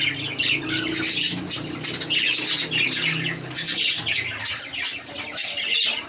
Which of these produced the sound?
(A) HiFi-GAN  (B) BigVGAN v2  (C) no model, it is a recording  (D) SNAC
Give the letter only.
C